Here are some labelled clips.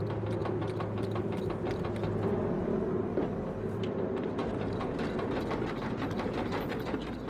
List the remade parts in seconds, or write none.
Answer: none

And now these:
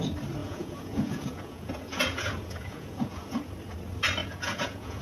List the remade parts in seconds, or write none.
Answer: 0.4-3.4; 4.2-5.0

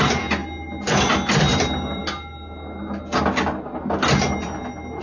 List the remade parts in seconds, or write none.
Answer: 0.0-0.4; 1.4-2.0

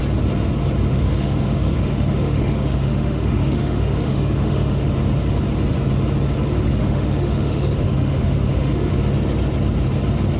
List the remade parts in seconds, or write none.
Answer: 0.9-4.9; 6.8-8.9

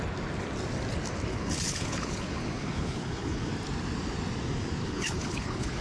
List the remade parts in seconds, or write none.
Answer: 1.3-3.5; 4.8-5.8

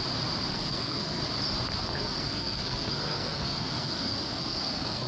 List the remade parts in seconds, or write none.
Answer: 0.5-1.2; 1.8-5.1